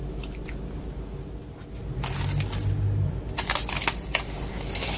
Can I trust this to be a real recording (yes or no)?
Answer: yes